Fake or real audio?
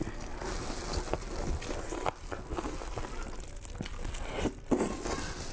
real